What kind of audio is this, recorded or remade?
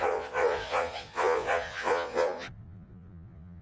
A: remade